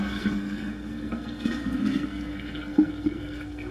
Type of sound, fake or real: fake